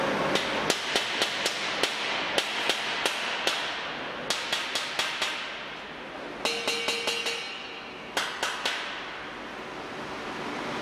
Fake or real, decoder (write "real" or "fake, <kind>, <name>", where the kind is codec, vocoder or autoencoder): real